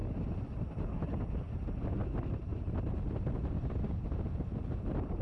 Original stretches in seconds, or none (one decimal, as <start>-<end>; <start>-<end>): 0.0-5.2

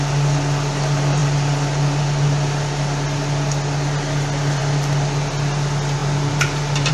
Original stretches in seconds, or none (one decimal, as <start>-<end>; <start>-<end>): 0.0-6.9